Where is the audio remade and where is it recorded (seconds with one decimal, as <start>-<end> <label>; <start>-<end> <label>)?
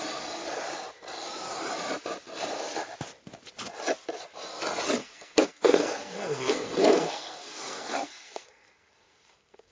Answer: 0.0-5.0 recorded; 5.0-9.7 remade